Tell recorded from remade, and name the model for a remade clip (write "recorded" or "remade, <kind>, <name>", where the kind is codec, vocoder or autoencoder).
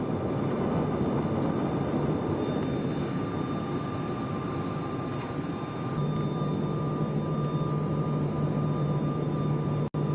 recorded